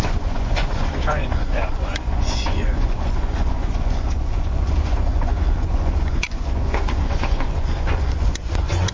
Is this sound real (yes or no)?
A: no